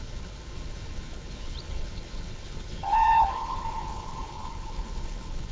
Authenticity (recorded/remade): remade